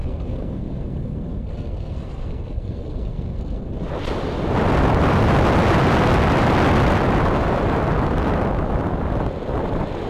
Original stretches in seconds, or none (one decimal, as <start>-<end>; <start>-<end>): 3.7-10.1